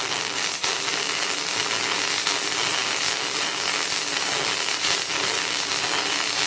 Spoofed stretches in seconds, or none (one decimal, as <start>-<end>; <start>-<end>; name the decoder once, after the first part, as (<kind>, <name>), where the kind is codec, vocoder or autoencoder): none